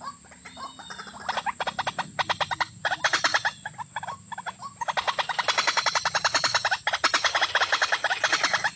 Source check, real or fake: real